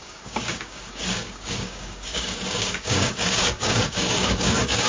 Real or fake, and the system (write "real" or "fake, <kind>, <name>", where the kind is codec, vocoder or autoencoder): fake, codec, DAC